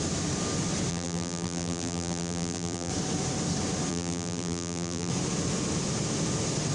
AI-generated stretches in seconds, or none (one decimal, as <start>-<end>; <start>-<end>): 0.9-2.9; 3.9-5.1